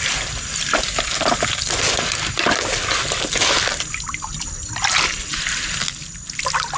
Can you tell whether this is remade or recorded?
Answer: recorded